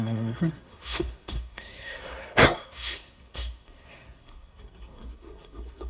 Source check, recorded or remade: remade